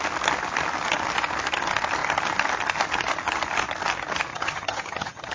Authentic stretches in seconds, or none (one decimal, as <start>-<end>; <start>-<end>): 0.0-4.3